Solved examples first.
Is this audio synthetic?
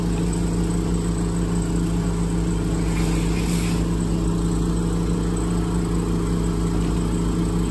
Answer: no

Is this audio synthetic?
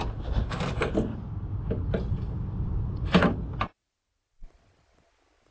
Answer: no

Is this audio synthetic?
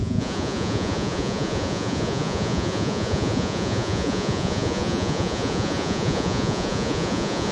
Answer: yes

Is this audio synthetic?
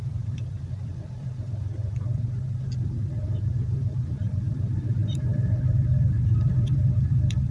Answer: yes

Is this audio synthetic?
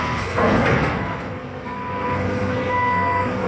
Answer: yes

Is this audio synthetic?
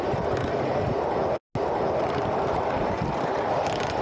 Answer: no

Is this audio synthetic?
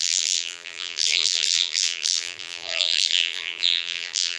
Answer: yes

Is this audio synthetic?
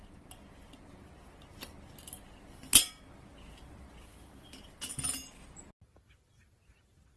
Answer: no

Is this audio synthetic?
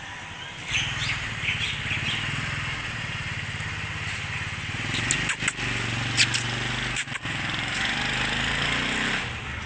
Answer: no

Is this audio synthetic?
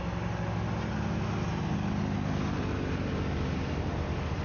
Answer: no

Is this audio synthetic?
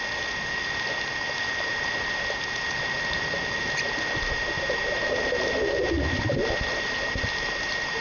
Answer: no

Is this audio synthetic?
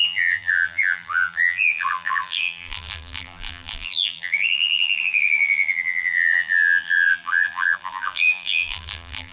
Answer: yes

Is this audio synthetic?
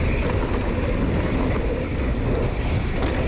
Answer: no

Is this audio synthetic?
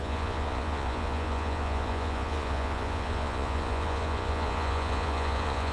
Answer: yes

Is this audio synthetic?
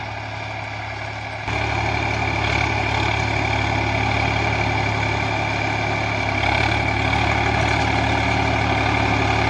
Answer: no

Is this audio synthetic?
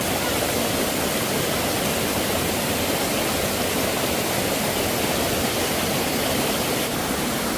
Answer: no